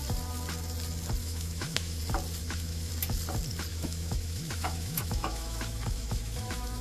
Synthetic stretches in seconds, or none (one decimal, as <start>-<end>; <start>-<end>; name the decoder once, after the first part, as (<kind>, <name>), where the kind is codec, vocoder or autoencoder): 1.2-2.0 (autoencoder, DAC-VAE); 2.4-2.9; 3.7-6.8